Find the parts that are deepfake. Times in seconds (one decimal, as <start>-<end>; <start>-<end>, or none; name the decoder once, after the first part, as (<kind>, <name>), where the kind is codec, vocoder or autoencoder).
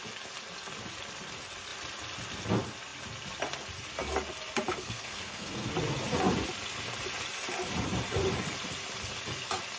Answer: 4.8-5.7 (codec, SNAC)